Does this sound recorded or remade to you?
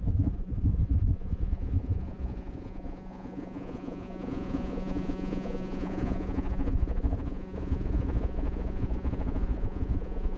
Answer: remade